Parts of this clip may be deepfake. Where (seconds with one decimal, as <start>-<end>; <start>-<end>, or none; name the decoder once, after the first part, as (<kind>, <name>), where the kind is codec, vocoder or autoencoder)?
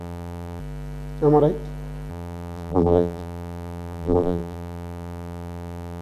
0.0-0.6 (vocoder, BigVGAN v2); 2.1-6.0